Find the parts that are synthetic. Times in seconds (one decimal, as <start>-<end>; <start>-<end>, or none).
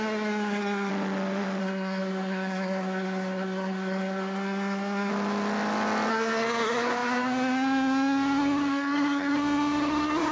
0.0-0.9; 1.6-5.1; 6.1-10.3